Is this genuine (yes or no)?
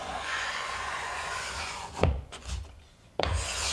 no